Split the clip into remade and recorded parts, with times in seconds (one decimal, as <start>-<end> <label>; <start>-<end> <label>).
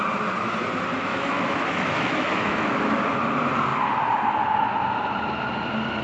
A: 0.0-1.1 recorded; 1.1-3.0 remade; 3.0-6.0 recorded